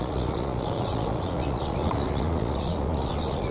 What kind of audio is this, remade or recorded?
remade